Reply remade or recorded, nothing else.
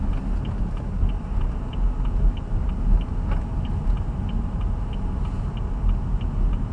recorded